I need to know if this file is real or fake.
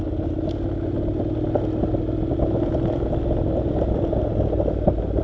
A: real